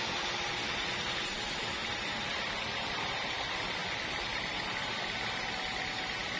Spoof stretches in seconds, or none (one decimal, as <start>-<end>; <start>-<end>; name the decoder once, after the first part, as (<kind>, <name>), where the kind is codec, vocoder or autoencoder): none